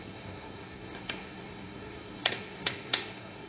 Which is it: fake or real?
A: fake